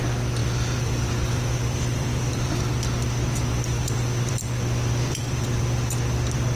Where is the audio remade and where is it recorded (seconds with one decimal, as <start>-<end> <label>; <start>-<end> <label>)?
0.0-0.4 recorded; 0.4-2.6 remade; 2.6-3.5 recorded; 3.5-5.6 remade; 5.6-6.5 recorded